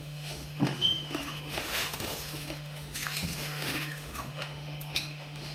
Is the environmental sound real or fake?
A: fake